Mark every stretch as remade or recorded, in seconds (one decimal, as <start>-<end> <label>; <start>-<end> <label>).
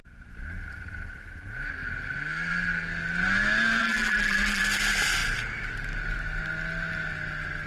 0.0-3.8 recorded; 3.8-4.6 remade; 4.6-7.7 recorded